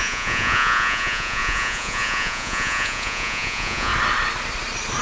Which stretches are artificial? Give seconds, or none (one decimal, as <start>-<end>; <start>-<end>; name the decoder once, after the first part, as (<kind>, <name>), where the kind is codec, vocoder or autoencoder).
0.0-3.9 (vocoder, Vocos)